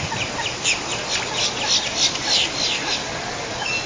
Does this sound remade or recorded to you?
recorded